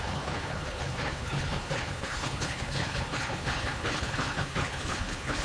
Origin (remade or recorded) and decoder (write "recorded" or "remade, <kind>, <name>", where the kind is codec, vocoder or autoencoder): remade, codec, HILCodec